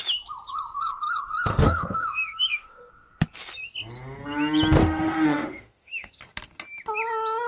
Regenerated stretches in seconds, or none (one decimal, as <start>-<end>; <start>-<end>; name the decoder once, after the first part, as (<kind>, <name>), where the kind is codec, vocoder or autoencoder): 1.5-2.9 (autoencoder, DAC-VAE); 4.8-6.1

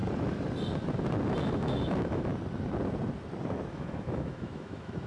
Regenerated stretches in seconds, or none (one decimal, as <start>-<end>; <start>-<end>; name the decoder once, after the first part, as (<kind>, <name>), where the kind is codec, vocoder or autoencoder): 1.4-2.3 (autoencoder, DAC-VAE); 3.7-5.1

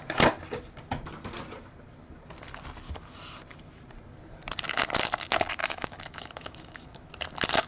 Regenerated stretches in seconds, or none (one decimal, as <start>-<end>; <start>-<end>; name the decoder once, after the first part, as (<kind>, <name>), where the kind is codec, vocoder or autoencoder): 5.6-7.1 (autoencoder, DAC-VAE)